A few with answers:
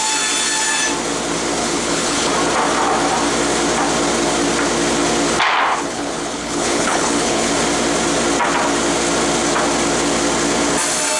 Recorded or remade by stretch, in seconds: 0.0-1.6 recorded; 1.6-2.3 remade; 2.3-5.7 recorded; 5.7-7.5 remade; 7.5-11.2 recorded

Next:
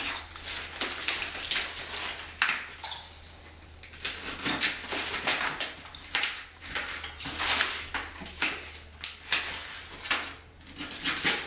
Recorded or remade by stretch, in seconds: 0.0-5.3 recorded; 5.3-7.4 remade; 7.4-11.5 recorded

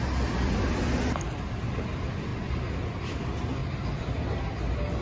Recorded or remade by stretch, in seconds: 0.0-5.0 recorded